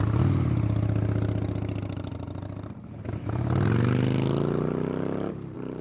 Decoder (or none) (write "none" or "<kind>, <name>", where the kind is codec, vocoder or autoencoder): none